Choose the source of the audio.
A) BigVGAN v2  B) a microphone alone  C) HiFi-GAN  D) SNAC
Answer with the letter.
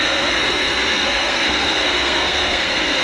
D